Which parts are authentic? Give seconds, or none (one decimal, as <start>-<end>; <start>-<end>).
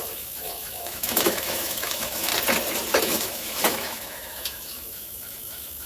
2.3-3.0